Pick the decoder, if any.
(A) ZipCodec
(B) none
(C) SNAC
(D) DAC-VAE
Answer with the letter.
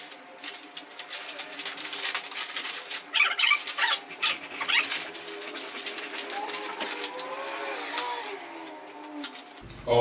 B